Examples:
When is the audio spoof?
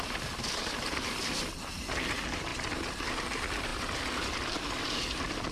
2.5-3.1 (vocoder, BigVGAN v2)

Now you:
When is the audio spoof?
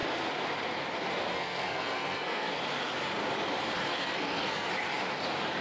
1.3-2.6 (codec, SNAC); 3.9-4.7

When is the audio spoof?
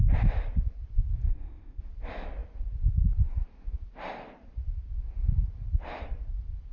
1.3-1.8 (codec, ZipCodec)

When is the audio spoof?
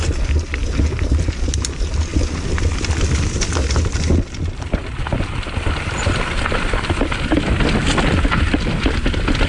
none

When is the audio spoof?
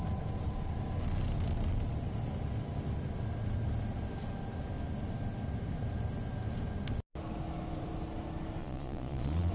8.6-9.5 (vocoder, Vocos)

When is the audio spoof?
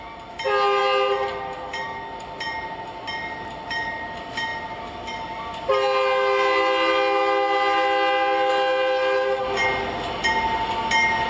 none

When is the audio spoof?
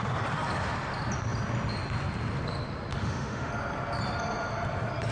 2.9-3.5 (autoencoder, DAC-VAE)